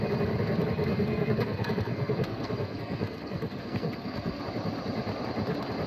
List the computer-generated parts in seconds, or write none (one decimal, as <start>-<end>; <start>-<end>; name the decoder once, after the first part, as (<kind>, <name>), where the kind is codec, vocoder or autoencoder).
0.9-4.4 (codec, SNAC)